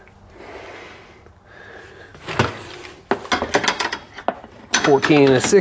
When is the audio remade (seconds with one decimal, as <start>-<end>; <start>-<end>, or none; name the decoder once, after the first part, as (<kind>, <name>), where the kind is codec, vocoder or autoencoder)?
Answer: none